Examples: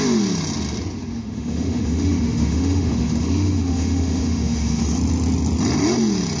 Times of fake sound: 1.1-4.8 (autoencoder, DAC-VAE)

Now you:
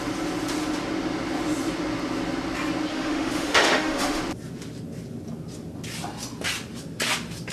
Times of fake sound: 2.9-4.2 (autoencoder, DAC-VAE)

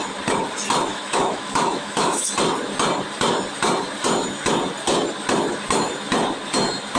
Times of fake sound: 0.9-2.3 (autoencoder, DAC-VAE)

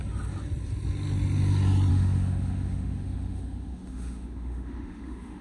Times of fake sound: 1.9-5.4 (autoencoder, DAC-VAE)

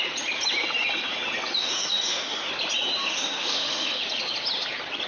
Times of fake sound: 1.6-2.5 (autoencoder, DAC-VAE); 3.0-4.0

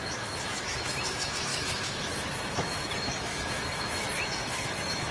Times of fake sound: 0.0-5.1 (autoencoder, DAC-VAE)